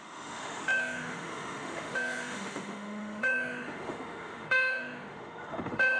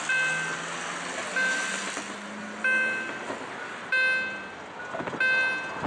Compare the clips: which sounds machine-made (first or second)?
first